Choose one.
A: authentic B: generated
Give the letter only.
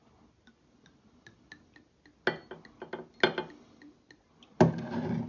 A